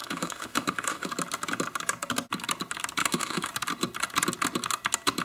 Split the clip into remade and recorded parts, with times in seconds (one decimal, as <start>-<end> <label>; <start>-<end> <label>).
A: 0.0-1.1 remade; 1.1-3.0 recorded; 3.0-3.5 remade; 3.5-5.2 recorded